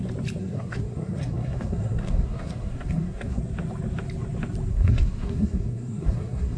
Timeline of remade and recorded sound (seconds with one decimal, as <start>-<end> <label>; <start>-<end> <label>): 0.0-0.4 recorded; 0.4-3.4 remade; 3.4-4.7 recorded; 4.7-6.6 remade